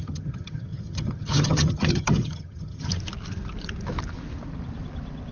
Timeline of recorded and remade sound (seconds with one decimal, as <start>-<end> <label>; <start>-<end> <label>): 0.0-2.9 remade; 2.9-5.3 recorded

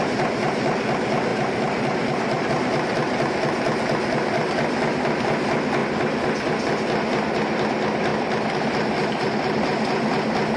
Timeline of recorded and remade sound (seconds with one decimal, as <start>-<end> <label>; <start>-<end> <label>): 0.0-1.3 recorded; 1.3-2.5 remade; 2.5-5.8 recorded; 5.8-6.6 remade; 6.6-8.1 recorded; 8.1-8.6 remade; 8.6-10.6 recorded

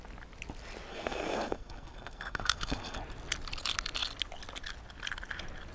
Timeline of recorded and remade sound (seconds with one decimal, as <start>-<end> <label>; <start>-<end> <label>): 0.0-0.9 recorded; 0.9-3.0 remade; 3.0-5.7 recorded

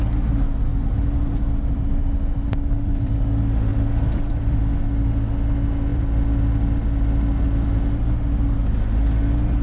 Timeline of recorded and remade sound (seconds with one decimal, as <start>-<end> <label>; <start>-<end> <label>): 0.0-0.7 recorded; 0.7-3.2 remade; 3.2-3.7 recorded; 3.7-4.6 remade; 4.6-5.9 recorded; 5.9-7.4 remade; 7.4-9.6 recorded

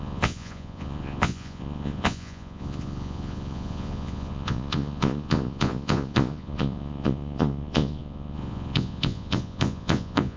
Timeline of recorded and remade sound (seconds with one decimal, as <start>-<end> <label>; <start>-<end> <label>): 0.0-10.4 remade

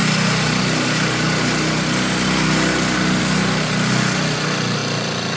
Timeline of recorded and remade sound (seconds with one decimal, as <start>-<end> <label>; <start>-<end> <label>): 0.0-5.4 recorded

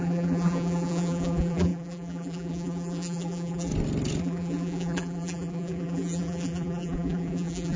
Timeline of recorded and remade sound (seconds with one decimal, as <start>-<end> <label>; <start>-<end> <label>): 0.0-3.7 remade; 3.7-4.2 recorded; 4.2-7.8 remade